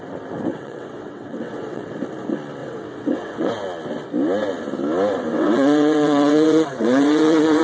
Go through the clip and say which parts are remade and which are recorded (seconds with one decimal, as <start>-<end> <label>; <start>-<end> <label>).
0.0-0.5 recorded; 0.5-1.9 remade; 1.9-2.6 recorded; 2.6-3.5 remade; 3.5-5.3 recorded; 5.3-7.6 remade

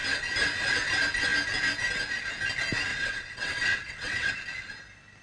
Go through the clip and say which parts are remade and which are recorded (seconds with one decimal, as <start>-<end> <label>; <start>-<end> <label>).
0.0-2.9 recorded; 2.9-4.3 remade; 4.3-5.2 recorded

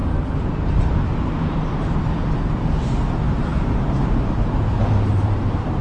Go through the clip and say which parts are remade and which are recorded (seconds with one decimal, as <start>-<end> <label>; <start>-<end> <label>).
0.0-5.8 recorded

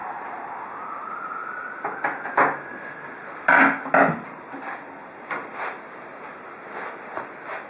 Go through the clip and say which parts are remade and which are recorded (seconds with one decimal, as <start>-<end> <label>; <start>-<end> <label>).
0.0-7.7 recorded

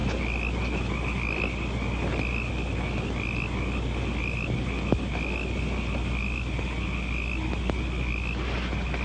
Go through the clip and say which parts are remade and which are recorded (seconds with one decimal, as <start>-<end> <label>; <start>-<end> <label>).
0.0-9.0 recorded

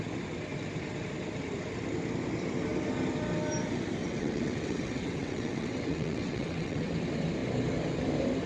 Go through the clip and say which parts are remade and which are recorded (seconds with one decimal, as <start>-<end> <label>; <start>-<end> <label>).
0.0-4.0 recorded; 4.0-6.9 remade; 6.9-8.5 recorded

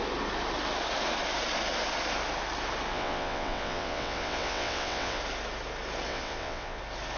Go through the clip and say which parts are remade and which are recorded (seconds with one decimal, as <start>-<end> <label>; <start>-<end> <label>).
0.0-2.9 recorded; 2.9-5.2 remade; 5.2-6.1 recorded; 6.1-6.8 remade; 6.8-7.2 recorded